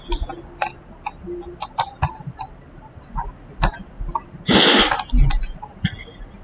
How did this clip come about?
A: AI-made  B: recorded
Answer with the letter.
B